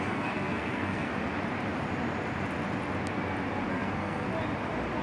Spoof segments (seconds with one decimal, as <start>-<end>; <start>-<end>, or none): 0.0-1.1; 3.7-4.3